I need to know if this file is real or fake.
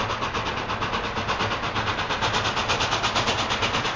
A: real